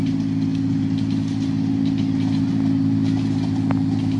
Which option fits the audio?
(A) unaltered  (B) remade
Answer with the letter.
A